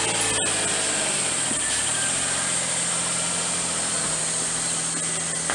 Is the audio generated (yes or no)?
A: no